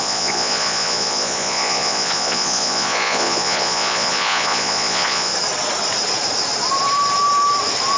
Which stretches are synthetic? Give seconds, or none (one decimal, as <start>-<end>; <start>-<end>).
0.0-5.3